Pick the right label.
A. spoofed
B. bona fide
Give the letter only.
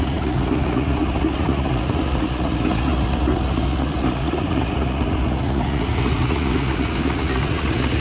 A